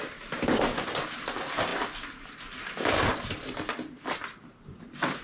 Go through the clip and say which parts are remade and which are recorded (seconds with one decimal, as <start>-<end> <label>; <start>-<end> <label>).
0.0-5.2 recorded